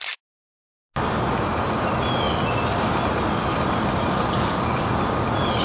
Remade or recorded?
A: recorded